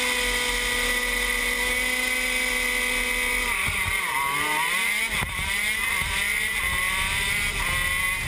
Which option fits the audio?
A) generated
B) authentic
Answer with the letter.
B